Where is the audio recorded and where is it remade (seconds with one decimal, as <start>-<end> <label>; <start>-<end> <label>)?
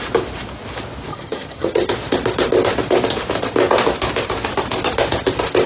0.0-1.1 recorded; 1.1-1.9 remade; 1.9-5.7 recorded